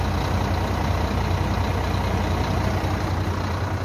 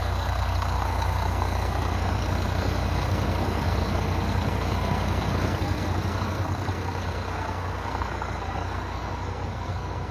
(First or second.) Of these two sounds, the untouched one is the first